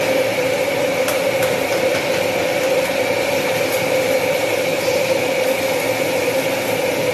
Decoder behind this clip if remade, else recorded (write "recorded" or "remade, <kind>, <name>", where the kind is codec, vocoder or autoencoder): recorded